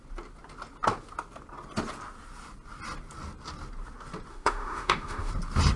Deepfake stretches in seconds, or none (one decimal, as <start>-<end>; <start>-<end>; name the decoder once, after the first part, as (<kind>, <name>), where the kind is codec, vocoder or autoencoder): 4.3-5.3 (autoencoder, DAC-VAE)